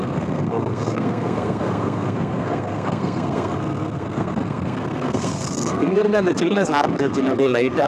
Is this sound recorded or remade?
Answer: remade